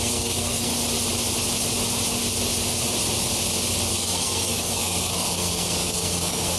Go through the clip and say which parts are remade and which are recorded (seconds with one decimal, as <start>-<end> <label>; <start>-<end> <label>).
0.0-0.7 remade; 0.7-3.9 recorded; 3.9-6.6 remade